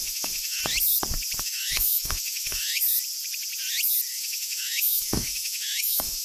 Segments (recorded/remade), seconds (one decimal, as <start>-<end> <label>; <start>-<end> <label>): 0.0-0.6 remade; 0.6-1.4 recorded; 1.4-2.8 remade; 2.8-4.1 recorded; 4.1-6.2 remade